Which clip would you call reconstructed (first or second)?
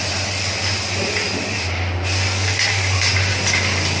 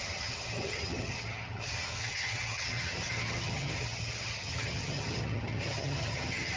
second